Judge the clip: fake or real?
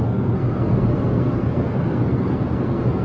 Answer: fake